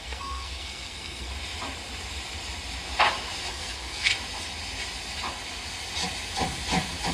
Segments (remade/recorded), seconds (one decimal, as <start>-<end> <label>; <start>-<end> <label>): 0.0-1.3 remade; 1.3-3.5 recorded; 3.5-4.1 remade; 4.1-7.1 recorded